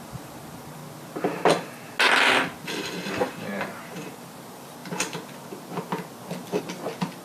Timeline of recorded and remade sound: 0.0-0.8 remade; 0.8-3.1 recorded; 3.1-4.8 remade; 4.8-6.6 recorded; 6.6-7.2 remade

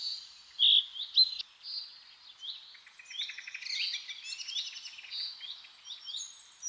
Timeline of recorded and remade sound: 0.0-1.9 remade; 1.9-5.9 recorded; 5.9-6.7 remade

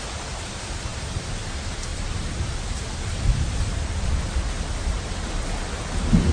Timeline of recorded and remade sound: 0.0-0.9 recorded; 0.9-1.5 remade; 1.5-1.9 recorded; 1.9-5.6 remade; 5.6-6.3 recorded

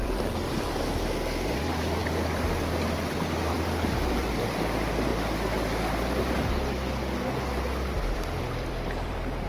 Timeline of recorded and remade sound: 0.0-5.1 remade; 5.1-8.1 recorded; 8.1-9.5 remade

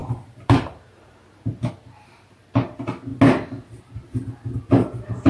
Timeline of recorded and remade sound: 0.0-1.7 remade; 1.7-5.3 recorded